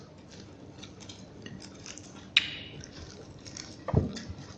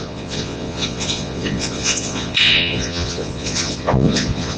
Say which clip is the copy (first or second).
second